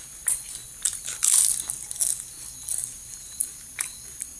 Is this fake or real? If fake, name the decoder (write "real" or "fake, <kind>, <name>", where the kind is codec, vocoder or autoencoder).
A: real